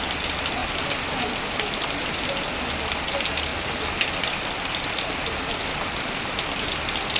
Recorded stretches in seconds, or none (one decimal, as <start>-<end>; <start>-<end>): 0.0-3.5; 6.5-7.2